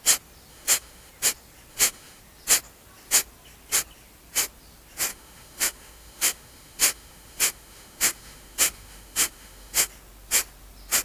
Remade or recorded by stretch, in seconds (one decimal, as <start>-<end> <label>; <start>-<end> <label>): 0.0-0.5 recorded; 0.5-1.1 remade; 1.1-1.7 recorded; 1.7-2.2 remade; 2.2-5.1 recorded; 5.1-9.9 remade; 9.9-11.0 recorded